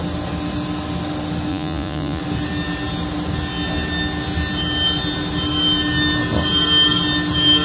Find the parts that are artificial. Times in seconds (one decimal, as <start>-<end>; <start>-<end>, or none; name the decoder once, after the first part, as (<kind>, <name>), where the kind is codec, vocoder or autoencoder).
1.5-2.2 (vocoder, Vocos)